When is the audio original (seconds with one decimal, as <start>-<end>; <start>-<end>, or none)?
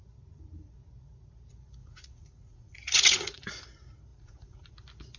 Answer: 0.0-1.8; 3.6-4.1; 4.7-5.2